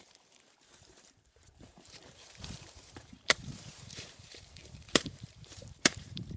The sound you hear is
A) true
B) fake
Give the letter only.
B